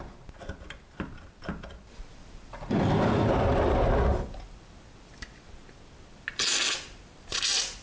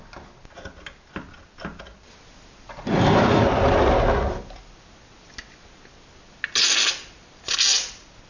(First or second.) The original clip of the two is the second